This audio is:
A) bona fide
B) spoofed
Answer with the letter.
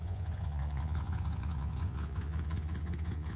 B